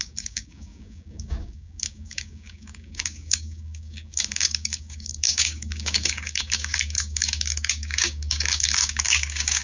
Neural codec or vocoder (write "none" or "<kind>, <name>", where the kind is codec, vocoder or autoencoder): codec, DAC